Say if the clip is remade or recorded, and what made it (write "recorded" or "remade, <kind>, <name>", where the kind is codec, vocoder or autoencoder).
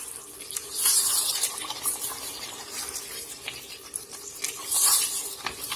remade, vocoder, BigVGAN v2